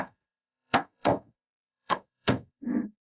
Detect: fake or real fake